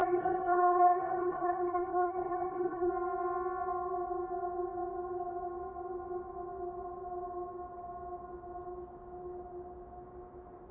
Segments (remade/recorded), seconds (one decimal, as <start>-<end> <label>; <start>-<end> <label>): 0.0-2.9 remade; 2.9-10.7 recorded